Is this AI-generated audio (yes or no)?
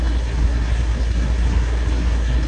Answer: yes